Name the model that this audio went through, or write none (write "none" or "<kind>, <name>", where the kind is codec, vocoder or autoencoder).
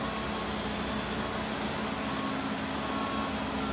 none